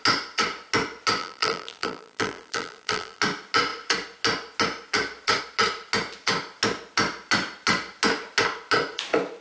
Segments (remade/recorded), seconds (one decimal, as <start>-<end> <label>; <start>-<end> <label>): 0.0-1.2 recorded; 1.2-3.2 remade; 3.2-9.4 recorded